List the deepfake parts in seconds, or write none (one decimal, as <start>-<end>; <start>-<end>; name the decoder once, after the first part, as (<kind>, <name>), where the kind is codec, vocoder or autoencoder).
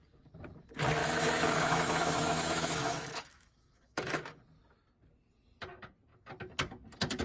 1.0-4.4 (autoencoder, DAC-VAE)